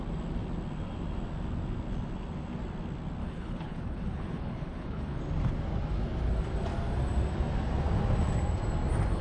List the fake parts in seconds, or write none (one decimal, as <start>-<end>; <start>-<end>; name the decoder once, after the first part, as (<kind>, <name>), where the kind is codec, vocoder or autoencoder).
3.2-5.2 (codec, HILCodec)